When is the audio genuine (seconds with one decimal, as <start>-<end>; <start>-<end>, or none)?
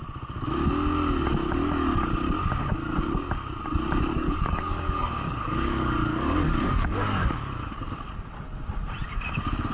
0.0-4.1; 7.7-9.7